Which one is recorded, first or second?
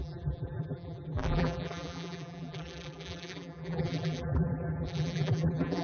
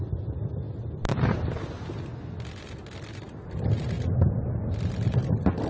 second